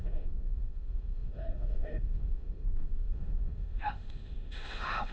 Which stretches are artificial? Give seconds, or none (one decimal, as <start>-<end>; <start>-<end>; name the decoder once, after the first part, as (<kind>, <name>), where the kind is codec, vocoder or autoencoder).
0.0-5.1 (autoencoder, DAC-VAE)